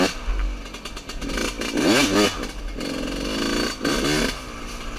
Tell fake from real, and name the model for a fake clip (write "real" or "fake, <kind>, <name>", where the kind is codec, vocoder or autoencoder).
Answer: real